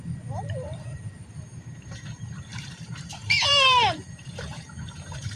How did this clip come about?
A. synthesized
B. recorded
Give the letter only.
A